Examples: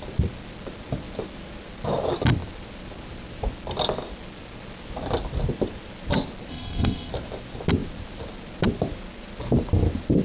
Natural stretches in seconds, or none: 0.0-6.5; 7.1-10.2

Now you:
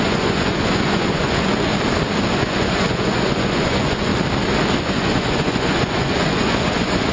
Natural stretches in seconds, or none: 1.7-2.3; 4.1-4.8

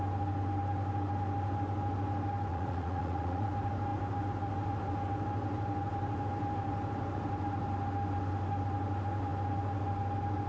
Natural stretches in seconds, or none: 0.0-2.5; 3.5-10.5

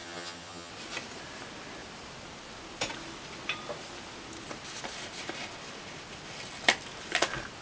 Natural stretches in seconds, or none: 0.7-7.6